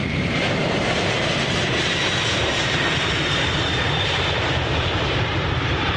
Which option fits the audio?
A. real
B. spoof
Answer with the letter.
B